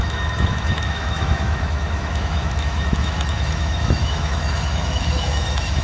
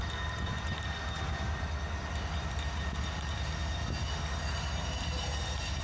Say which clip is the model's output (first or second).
first